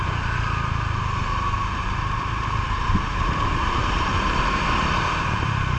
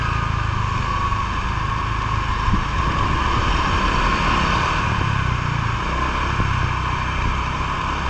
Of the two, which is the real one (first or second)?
second